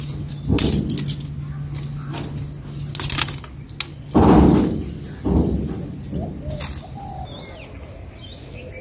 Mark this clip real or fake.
real